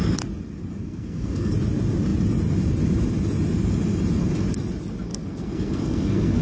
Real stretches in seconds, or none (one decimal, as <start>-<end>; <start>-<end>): 0.0-0.7; 1.5-5.1